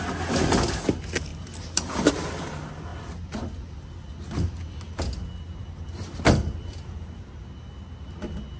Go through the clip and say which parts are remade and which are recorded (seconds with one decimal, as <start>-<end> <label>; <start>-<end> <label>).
0.0-8.6 recorded